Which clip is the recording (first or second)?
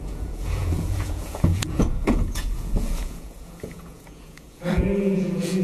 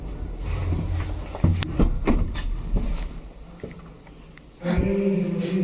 second